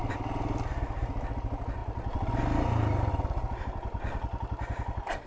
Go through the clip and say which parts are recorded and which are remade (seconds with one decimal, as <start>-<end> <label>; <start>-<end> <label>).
0.0-5.3 recorded